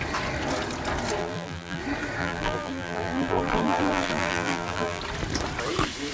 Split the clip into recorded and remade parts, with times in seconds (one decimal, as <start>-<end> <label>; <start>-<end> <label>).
0.0-1.2 recorded; 1.2-1.8 remade; 1.8-2.2 recorded; 2.2-5.0 remade; 5.0-6.1 recorded